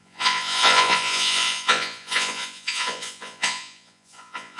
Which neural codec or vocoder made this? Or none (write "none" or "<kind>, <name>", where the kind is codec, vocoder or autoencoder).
vocoder, Vocos